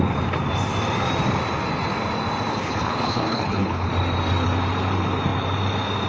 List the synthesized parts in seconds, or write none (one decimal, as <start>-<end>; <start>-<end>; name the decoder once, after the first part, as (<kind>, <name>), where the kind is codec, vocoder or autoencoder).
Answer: 2.5-3.9 (codec, HILCodec)